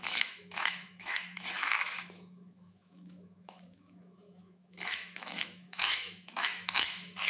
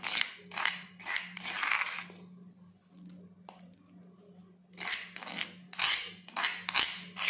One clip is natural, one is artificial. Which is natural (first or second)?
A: second